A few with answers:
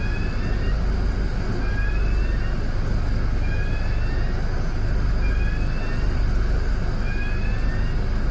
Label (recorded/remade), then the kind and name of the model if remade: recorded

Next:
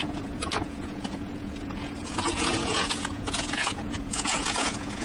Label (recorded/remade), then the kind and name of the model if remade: remade, vocoder, Vocos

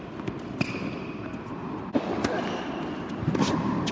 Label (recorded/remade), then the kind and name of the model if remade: recorded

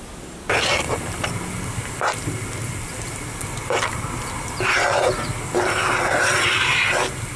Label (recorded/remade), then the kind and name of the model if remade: recorded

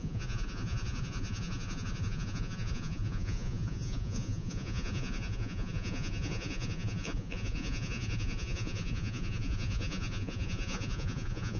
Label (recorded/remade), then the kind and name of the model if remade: remade, vocoder, Vocos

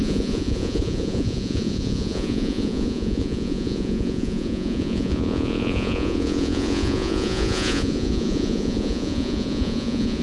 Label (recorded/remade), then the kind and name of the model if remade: remade, vocoder, Vocos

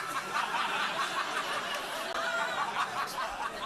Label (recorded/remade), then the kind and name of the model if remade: recorded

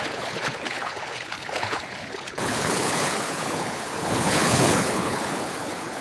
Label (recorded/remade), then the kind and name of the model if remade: remade, codec, HILCodec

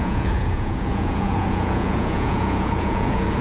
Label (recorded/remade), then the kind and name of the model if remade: remade, vocoder, Vocos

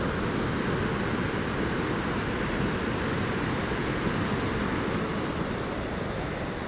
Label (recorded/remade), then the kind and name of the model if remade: recorded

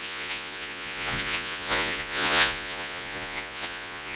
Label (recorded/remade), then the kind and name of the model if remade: remade, vocoder, Vocos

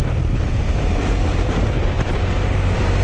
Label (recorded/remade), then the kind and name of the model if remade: remade, vocoder, BigVGAN v2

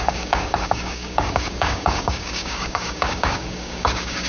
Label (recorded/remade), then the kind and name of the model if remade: remade, codec, DAC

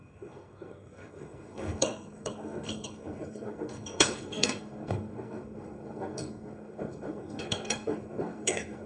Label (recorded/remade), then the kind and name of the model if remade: remade, codec, SNAC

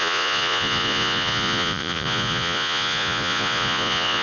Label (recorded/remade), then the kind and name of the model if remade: remade, vocoder, Vocos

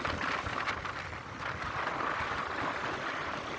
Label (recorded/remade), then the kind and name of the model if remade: recorded